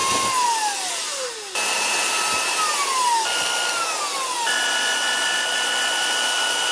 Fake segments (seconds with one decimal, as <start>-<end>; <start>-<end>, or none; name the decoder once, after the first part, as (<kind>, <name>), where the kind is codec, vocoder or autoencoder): none